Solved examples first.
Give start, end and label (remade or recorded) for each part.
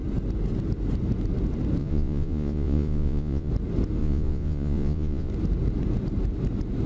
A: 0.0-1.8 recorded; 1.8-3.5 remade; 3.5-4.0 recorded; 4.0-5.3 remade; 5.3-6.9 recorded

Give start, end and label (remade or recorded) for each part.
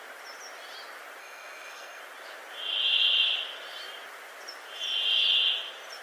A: 0.0-1.2 recorded; 1.2-2.0 remade; 2.0-6.0 recorded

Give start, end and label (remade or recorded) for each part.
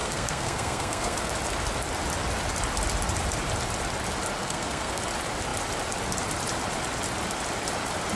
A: 0.0-1.3 remade; 1.3-4.4 recorded; 4.4-5.0 remade; 5.0-8.2 recorded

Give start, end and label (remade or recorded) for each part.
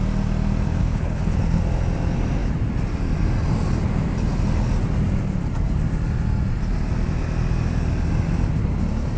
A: 0.0-0.8 recorded; 0.8-1.6 remade; 1.6-9.2 recorded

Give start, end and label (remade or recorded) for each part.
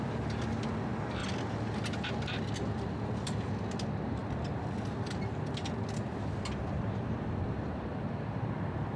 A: 0.0-9.0 recorded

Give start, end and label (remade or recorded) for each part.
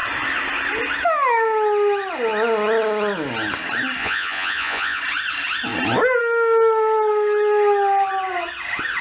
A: 0.0-4.0 recorded; 4.0-5.0 remade; 5.0-9.0 recorded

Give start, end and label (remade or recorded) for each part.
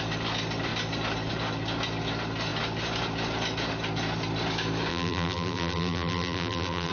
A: 0.0-4.9 recorded; 4.9-6.9 remade